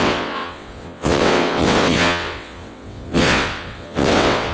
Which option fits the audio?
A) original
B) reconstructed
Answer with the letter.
B